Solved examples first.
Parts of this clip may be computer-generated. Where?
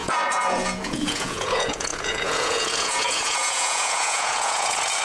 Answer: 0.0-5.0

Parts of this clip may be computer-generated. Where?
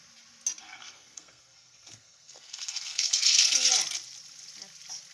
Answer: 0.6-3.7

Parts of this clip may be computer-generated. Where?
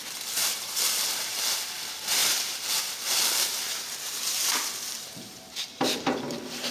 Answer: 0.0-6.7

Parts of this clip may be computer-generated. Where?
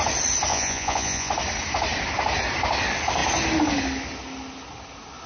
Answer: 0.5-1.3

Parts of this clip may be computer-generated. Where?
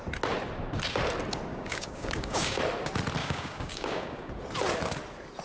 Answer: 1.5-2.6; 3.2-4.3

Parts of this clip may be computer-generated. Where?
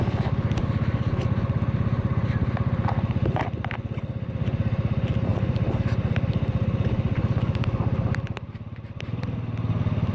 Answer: none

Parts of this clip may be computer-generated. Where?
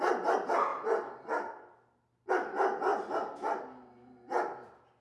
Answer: 0.7-2.3; 2.9-3.6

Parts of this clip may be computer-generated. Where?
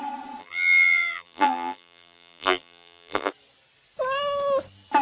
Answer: 0.4-3.3